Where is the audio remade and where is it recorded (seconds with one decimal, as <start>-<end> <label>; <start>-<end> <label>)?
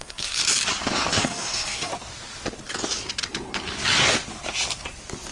0.0-0.4 remade; 0.4-1.1 recorded; 1.1-1.9 remade; 1.9-5.3 recorded